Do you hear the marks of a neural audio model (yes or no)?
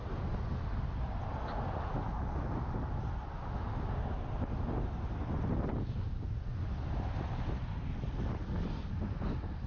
no